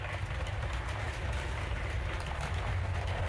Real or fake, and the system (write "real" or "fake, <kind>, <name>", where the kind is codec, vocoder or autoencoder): fake, vocoder, BigVGAN v2